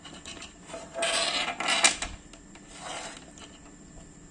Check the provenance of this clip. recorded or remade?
recorded